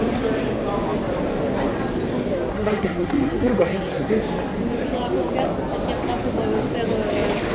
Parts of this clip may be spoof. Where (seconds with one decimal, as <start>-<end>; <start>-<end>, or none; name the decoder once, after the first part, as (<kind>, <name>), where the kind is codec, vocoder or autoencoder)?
2.5-4.1 (codec, SNAC)